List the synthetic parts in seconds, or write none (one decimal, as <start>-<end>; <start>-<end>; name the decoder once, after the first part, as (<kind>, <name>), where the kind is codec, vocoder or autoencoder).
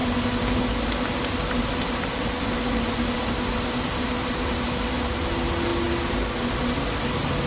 none